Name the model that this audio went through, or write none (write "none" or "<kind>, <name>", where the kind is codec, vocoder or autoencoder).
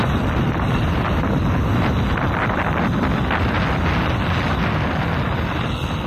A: none